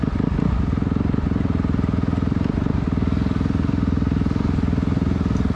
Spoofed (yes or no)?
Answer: no